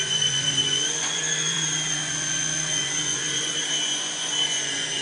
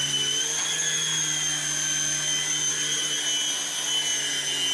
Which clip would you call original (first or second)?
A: second